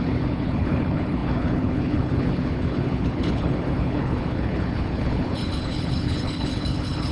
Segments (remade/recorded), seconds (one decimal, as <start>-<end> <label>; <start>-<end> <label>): 0.0-7.1 remade